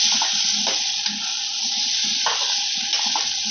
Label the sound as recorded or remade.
recorded